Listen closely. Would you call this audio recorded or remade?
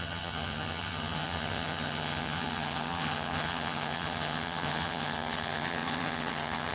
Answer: remade